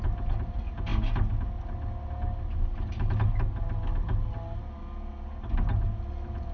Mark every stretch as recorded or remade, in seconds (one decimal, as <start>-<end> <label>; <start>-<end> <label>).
0.0-6.5 recorded